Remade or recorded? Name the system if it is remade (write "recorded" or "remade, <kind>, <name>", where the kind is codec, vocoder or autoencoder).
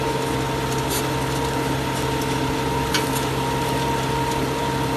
recorded